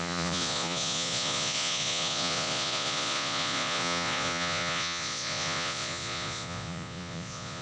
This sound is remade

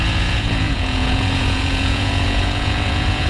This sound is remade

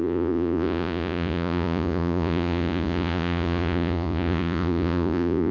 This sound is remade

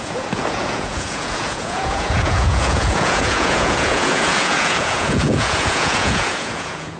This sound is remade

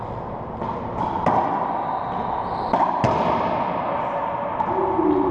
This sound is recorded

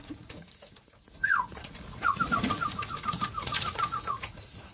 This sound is remade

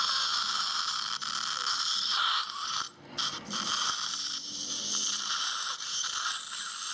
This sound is recorded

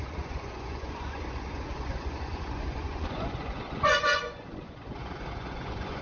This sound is remade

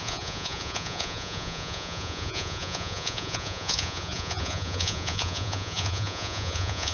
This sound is remade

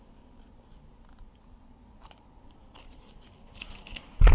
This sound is recorded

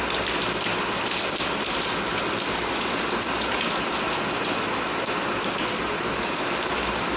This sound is recorded